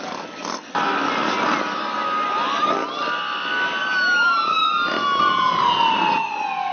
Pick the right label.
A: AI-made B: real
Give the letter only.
B